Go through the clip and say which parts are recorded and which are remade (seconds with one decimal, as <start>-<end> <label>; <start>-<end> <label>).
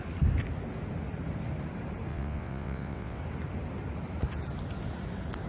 0.0-2.1 recorded; 2.1-3.2 remade; 3.2-5.5 recorded